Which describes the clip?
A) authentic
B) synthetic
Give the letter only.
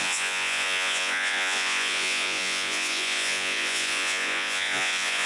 B